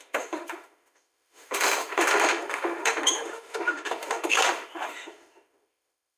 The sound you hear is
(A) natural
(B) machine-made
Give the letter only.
B